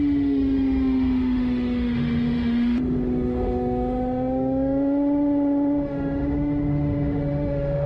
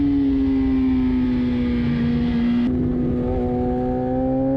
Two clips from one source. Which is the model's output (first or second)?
first